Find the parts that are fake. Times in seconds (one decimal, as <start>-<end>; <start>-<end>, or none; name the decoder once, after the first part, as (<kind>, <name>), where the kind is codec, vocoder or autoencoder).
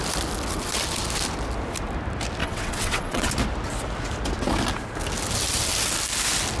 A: 2.4-3.3 (vocoder, WaveNeXt)